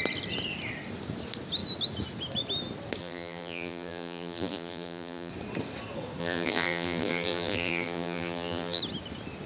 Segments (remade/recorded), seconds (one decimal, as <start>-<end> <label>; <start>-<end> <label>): 0.0-3.0 recorded; 3.0-5.3 remade; 5.3-6.2 recorded; 6.2-8.8 remade; 8.8-9.5 recorded